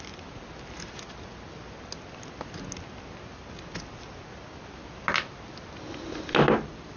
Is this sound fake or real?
real